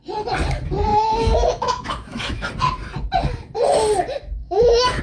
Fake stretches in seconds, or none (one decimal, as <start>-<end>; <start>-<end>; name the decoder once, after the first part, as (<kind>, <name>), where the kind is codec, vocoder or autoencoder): 0.9-2.5 (autoencoder, DAC-VAE); 4.4-5.0